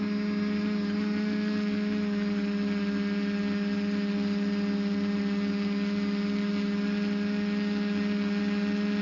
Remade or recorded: recorded